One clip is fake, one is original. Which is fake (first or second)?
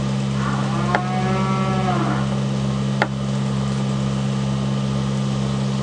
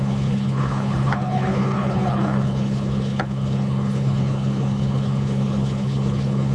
second